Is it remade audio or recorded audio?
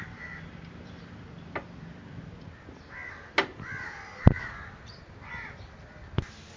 recorded